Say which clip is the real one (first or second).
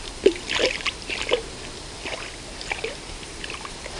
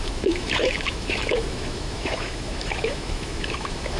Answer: first